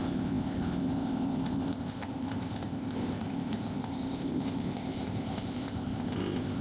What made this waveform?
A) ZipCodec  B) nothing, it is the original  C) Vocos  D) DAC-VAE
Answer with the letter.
A